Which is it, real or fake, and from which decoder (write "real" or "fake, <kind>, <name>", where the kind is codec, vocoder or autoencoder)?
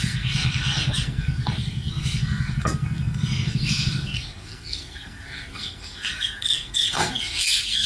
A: fake, codec, SNAC